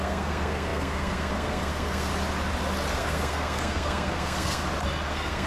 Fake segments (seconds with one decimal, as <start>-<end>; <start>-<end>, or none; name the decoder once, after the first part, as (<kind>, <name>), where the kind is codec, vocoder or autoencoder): 0.0-2.1 (codec, SNAC); 2.9-4.6; 5.1-5.5